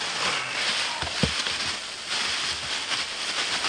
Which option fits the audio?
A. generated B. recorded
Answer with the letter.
B